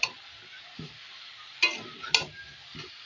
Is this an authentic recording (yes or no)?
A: yes